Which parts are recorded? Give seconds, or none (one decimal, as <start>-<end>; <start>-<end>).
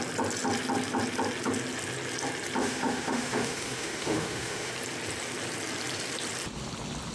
0.0-2.6; 4.7-7.1